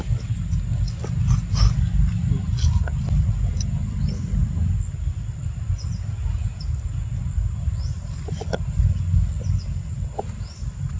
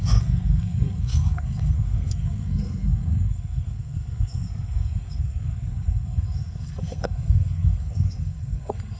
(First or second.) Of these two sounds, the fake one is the second